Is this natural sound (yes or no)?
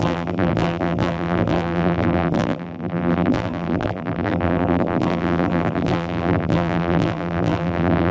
no